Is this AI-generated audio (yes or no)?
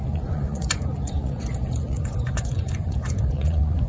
yes